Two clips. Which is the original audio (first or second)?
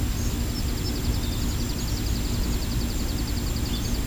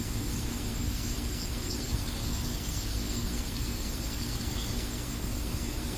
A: first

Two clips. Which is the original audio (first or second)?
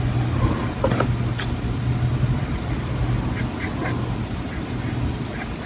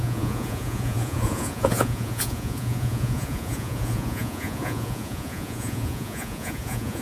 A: first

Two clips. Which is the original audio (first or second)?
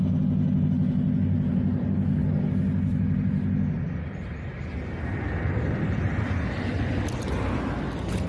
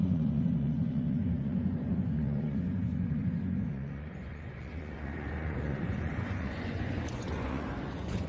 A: first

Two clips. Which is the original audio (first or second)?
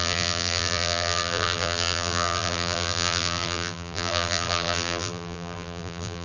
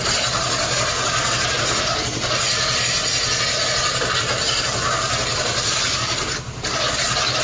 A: second